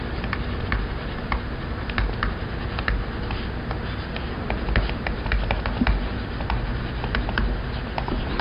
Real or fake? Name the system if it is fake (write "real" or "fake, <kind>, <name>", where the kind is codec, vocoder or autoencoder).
real